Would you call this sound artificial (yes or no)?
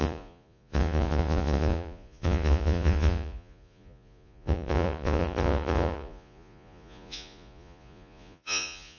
yes